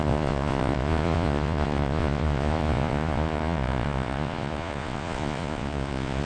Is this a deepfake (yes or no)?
yes